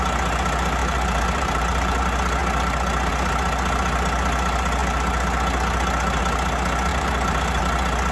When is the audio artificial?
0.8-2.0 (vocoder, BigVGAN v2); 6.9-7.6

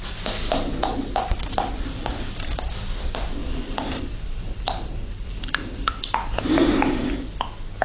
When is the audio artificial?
3.4-6.4 (vocoder, BigVGAN v2)

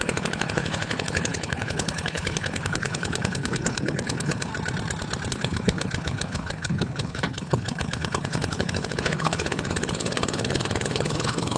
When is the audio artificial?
0.0-4.5 (codec, HILCodec); 5.3-11.6